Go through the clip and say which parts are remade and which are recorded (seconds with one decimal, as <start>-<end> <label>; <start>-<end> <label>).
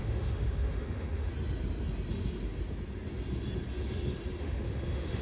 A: 0.0-1.3 remade; 1.3-4.4 recorded; 4.4-5.2 remade